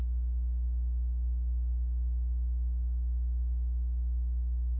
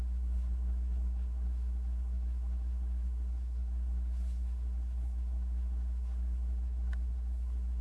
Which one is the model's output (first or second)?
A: second